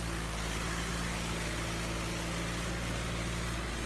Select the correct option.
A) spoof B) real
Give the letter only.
B